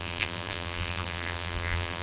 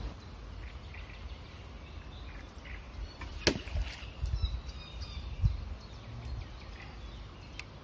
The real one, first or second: second